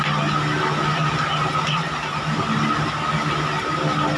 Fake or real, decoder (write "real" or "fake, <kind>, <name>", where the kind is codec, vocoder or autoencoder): real